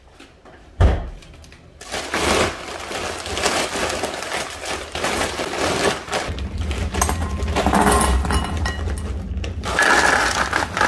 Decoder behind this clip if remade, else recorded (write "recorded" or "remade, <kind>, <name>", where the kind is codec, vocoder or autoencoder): recorded